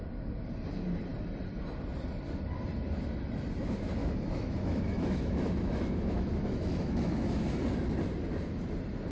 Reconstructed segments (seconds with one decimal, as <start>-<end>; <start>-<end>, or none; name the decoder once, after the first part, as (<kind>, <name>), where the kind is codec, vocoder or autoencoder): 4.0-7.5 (autoencoder, DAC-VAE)

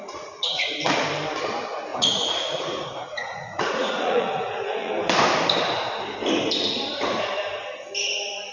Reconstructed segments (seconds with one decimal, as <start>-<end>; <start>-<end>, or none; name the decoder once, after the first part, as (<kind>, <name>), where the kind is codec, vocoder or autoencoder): 0.0-0.7 (vocoder, Vocos); 1.9-4.9

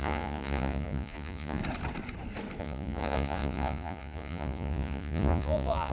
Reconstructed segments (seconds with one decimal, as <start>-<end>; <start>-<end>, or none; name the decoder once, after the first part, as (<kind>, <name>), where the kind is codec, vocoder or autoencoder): 0.0-1.6 (vocoder, Vocos); 2.6-5.9